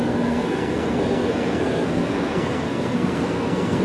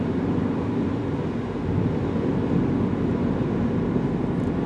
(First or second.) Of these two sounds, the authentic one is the second